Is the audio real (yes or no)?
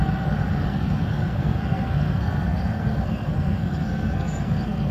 no